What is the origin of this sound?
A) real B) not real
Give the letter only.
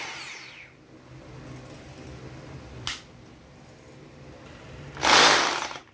A